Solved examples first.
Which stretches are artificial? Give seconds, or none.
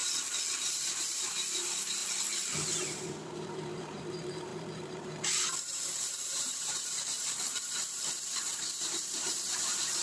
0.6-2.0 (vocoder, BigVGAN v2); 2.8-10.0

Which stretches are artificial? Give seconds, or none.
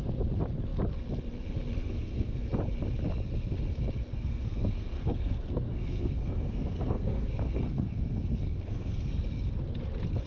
1.8-2.5 (codec, SNAC); 4.1-9.2